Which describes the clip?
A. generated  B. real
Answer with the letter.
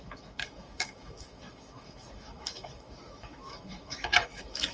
A